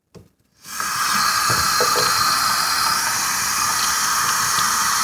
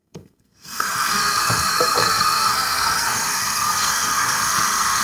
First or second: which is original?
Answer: first